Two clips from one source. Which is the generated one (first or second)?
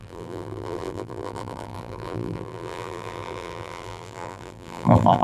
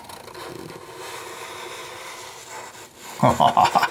first